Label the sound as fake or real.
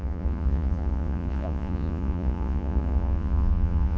fake